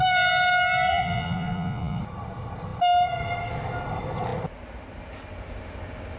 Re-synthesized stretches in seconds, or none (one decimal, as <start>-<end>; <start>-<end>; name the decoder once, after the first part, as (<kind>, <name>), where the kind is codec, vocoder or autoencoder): 0.9-2.0 (vocoder, Vocos)